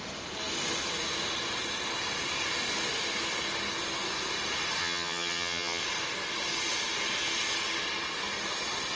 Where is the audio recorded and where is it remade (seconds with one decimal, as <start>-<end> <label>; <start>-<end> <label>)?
0.0-4.8 recorded; 4.8-5.8 remade; 5.8-9.0 recorded